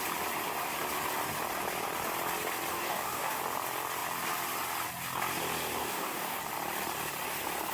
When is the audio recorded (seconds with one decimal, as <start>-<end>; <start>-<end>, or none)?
0.0-2.7; 3.4-5.8; 6.4-7.7